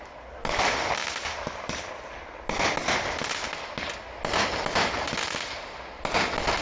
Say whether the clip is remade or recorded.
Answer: recorded